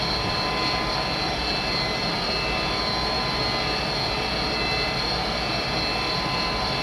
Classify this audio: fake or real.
real